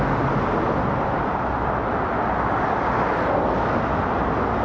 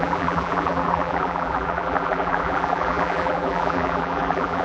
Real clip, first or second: first